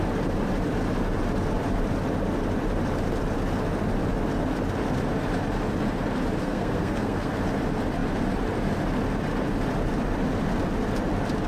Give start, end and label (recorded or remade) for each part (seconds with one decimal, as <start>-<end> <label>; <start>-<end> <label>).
0.0-6.4 recorded; 6.4-7.3 remade; 7.3-11.5 recorded